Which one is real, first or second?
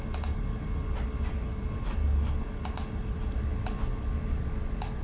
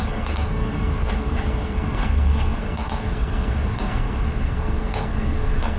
first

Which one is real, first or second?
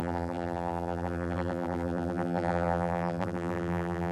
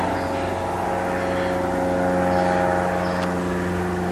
second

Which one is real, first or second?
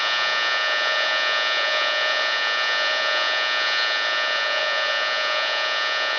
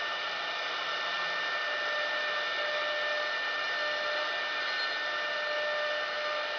second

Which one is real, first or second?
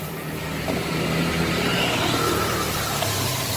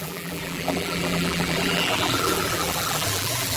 first